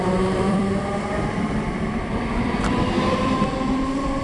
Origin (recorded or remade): remade